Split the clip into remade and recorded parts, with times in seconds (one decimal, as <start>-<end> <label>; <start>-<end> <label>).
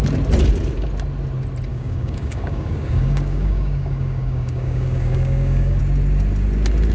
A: 0.0-1.7 recorded; 1.7-5.8 remade; 5.8-6.9 recorded